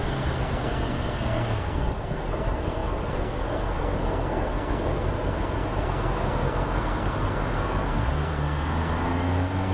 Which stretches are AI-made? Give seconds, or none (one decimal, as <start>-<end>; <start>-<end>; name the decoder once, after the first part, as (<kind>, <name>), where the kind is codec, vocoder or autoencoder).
0.0-9.7 (codec, SNAC)